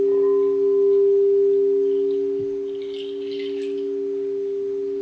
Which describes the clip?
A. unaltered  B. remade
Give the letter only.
A